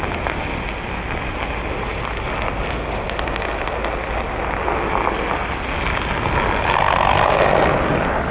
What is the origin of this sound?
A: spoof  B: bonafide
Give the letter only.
B